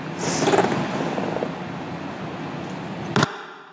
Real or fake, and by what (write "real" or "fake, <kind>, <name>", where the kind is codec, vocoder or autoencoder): real